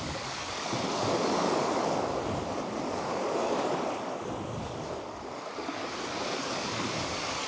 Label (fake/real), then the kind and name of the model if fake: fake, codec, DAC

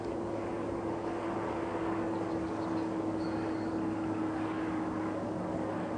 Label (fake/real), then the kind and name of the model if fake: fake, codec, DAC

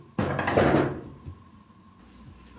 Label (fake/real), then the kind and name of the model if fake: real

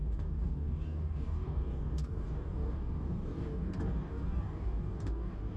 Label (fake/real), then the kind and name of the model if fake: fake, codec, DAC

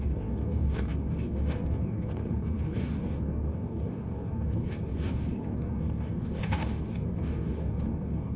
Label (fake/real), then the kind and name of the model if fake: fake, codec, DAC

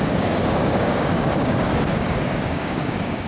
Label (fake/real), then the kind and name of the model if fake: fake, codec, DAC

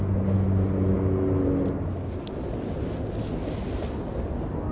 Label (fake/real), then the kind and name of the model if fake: real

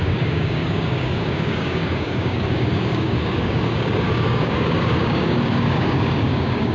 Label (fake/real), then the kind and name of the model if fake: fake, codec, DAC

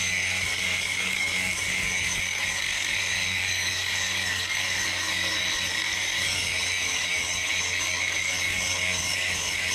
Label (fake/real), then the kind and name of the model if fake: fake, codec, DAC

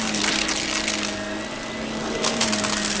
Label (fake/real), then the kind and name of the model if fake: real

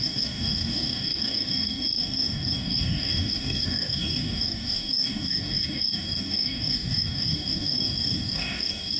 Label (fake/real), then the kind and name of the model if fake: fake, codec, DAC